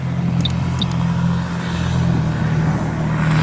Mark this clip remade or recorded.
recorded